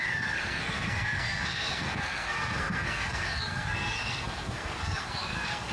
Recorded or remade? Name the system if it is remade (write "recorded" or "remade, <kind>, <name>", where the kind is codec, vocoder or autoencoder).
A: remade, codec, SNAC